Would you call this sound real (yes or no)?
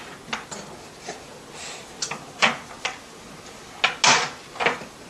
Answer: yes